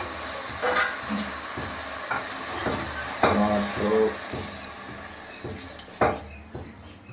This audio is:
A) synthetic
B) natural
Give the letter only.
B